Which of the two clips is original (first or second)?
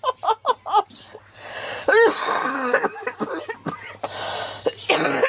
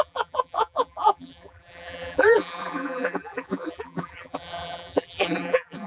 first